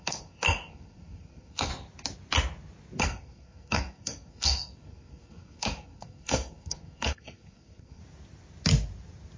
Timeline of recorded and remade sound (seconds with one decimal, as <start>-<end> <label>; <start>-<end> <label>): 0.0-1.7 remade; 1.7-3.0 recorded; 3.0-8.0 remade; 8.0-9.4 recorded